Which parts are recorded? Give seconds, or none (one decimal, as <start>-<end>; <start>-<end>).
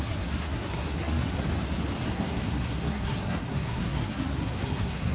1.5-2.1